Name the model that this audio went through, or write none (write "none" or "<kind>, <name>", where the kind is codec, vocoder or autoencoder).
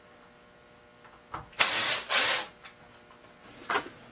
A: none